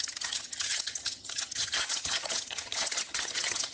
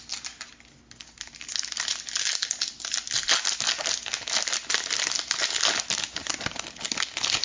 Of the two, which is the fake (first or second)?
first